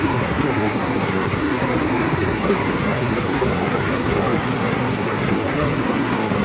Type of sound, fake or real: fake